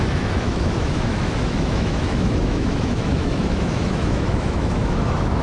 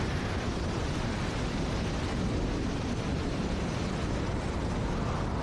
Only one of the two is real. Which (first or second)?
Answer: second